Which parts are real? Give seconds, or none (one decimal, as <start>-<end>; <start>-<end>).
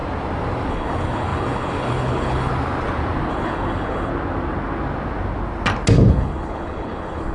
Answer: 0.0-0.7; 2.5-3.3; 4.1-6.1